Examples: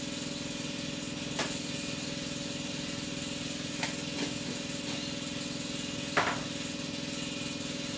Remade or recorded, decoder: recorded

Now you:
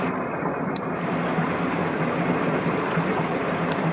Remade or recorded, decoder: recorded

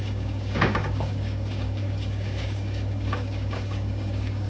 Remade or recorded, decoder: remade, codec, DAC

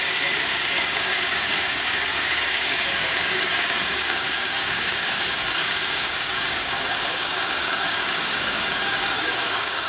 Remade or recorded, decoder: remade, codec, DAC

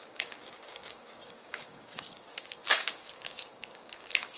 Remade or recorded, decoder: remade, codec, DAC